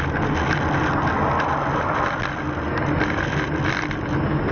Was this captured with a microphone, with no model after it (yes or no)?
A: yes